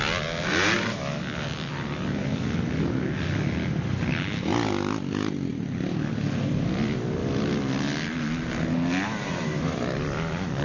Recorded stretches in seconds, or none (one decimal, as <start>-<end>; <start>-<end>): 0.0-10.6